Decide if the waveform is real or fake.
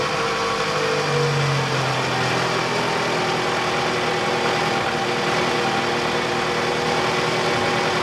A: real